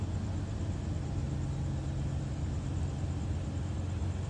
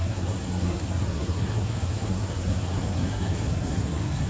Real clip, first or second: first